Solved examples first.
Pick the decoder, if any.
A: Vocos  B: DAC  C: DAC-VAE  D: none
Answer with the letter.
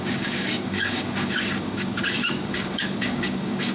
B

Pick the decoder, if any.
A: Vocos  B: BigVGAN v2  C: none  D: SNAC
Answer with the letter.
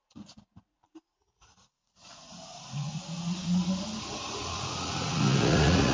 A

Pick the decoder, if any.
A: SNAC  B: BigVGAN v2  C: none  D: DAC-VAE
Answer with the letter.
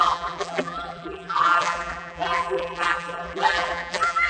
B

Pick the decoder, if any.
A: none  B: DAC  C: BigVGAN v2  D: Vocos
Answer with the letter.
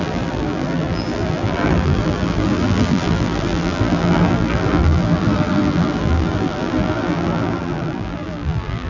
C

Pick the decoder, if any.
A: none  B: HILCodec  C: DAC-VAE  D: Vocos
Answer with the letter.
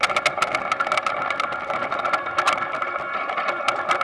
A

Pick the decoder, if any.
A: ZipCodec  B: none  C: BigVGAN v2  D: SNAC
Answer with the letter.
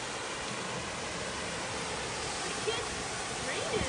B